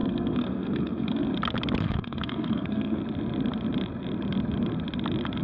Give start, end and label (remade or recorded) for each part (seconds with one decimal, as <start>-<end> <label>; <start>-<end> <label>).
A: 0.0-1.3 remade; 1.3-1.8 recorded; 1.8-3.0 remade; 3.0-5.4 recorded